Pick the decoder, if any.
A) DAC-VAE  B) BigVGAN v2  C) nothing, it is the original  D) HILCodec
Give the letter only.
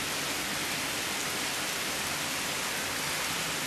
B